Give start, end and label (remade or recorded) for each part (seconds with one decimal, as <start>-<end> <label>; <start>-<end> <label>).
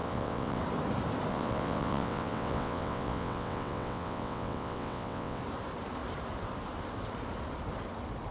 0.0-0.6 remade; 0.6-1.3 recorded; 1.3-5.4 remade; 5.4-8.3 recorded